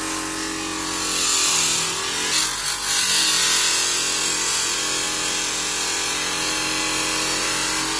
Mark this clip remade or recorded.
recorded